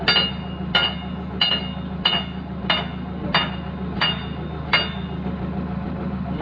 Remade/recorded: recorded